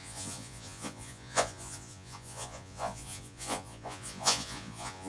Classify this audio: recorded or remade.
remade